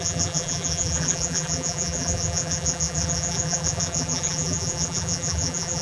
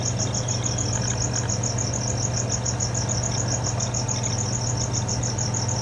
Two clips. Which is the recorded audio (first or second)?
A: second